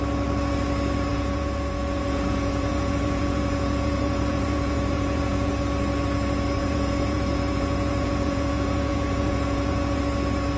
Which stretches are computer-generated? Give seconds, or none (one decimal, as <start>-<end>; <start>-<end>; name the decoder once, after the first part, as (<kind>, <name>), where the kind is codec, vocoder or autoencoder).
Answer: 1.1-5.5 (vocoder, Vocos); 6.6-10.0